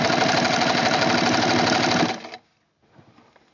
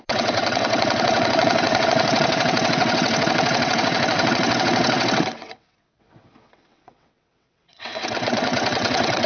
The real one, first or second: first